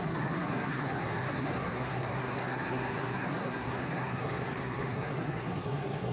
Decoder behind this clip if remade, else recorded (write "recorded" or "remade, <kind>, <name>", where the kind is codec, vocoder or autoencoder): remade, codec, SNAC